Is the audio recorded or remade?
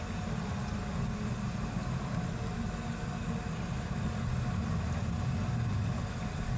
recorded